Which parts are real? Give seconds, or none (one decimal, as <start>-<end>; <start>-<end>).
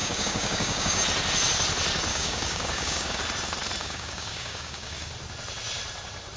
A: 1.0-2.1; 3.2-3.8; 5.1-6.4